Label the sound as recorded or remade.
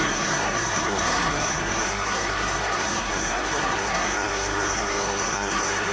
remade